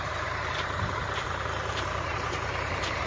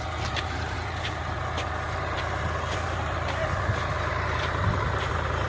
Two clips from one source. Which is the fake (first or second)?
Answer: first